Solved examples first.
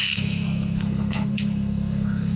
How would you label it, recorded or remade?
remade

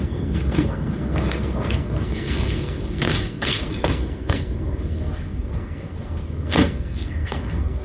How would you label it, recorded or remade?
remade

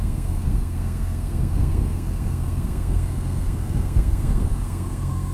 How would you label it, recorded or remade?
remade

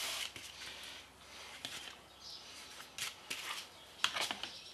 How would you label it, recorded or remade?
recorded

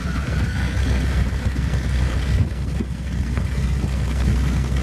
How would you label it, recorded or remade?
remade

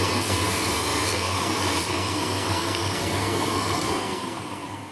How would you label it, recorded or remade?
remade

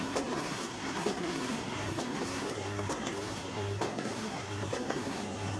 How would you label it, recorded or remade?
remade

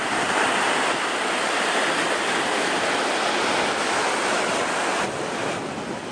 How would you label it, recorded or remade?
recorded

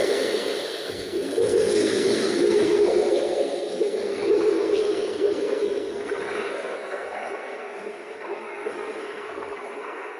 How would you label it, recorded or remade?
remade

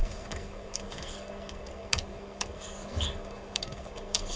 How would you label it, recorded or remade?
remade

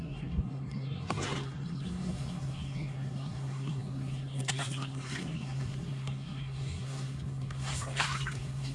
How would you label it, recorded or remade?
remade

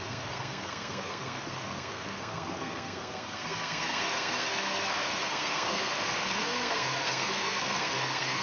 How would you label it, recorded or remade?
remade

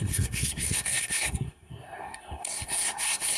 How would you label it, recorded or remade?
remade